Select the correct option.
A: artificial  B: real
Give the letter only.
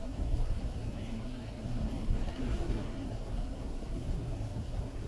A